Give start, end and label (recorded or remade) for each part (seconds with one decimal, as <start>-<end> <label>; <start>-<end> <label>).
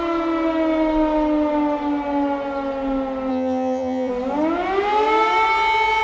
0.0-3.3 recorded; 3.3-4.1 remade; 4.1-6.0 recorded